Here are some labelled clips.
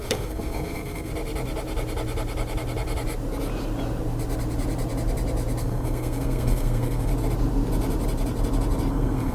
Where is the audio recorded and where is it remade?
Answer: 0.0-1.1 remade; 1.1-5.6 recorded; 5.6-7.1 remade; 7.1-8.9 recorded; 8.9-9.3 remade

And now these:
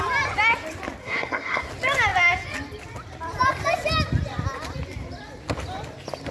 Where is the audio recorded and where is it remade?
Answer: 0.0-1.0 recorded; 1.0-1.7 remade; 1.7-6.3 recorded

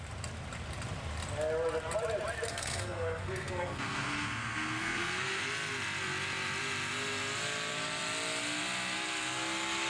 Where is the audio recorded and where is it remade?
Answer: 0.0-2.5 recorded; 2.5-5.4 remade; 5.4-9.9 recorded

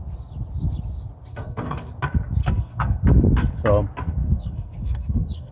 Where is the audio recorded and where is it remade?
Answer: 0.0-1.3 recorded; 1.3-1.9 remade; 1.9-2.4 recorded; 2.4-3.0 remade; 3.0-4.2 recorded; 4.2-5.5 remade